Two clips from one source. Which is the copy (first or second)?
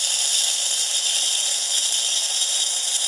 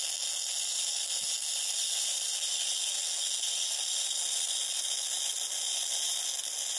first